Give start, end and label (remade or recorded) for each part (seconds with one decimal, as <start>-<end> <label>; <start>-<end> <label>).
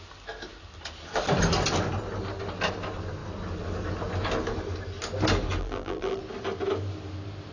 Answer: 0.0-5.6 recorded; 5.6-6.2 remade; 6.2-7.5 recorded